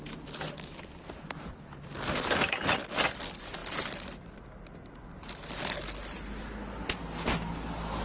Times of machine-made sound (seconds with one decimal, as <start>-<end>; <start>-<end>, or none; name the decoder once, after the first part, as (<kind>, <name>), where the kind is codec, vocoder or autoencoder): none